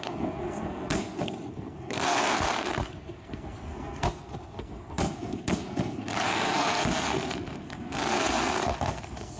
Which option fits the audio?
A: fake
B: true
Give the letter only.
A